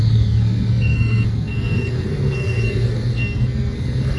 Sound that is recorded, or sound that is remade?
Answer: remade